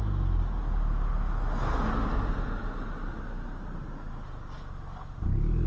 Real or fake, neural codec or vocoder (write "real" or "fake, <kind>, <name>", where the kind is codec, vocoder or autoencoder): real